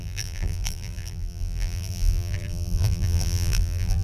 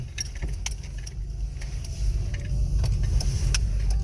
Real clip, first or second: second